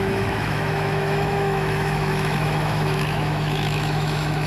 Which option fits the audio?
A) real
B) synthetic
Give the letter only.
B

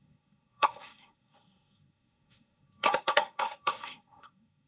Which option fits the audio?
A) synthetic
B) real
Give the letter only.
A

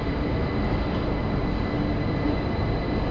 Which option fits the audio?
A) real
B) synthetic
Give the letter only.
A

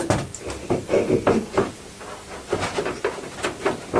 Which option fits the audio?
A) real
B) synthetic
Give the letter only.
B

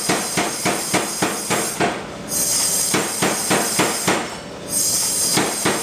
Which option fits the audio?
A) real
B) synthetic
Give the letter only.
A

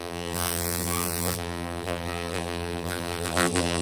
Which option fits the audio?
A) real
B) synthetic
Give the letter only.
B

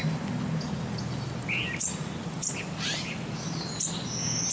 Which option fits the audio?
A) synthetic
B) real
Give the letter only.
B